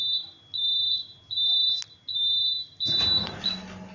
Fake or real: real